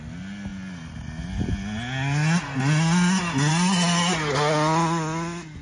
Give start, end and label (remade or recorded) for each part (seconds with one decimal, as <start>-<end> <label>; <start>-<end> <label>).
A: 0.0-5.6 recorded